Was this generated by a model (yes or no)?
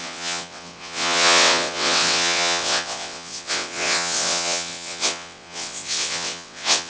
yes